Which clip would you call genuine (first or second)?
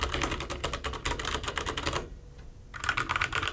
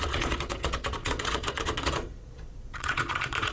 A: first